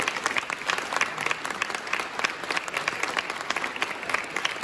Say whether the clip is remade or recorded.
recorded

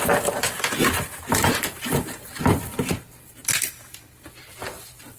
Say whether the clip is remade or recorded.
remade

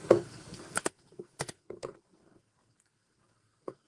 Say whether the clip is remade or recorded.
remade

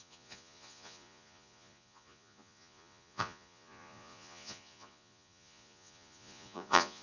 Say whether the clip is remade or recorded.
remade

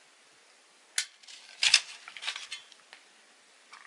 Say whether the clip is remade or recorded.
recorded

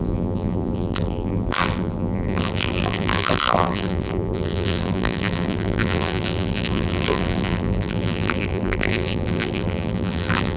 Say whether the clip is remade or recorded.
remade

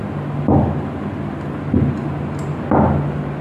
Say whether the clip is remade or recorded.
recorded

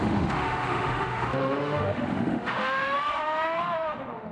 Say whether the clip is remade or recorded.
remade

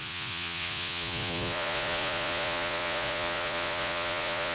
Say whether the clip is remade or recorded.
remade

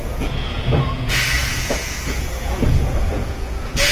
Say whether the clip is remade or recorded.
remade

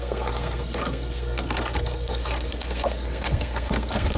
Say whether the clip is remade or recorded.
remade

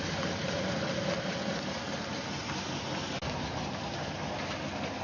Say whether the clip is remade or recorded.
recorded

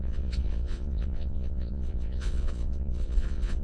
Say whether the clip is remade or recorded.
remade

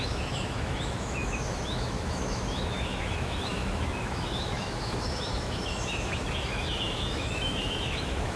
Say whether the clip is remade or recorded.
remade